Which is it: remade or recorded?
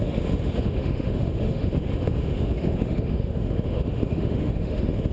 remade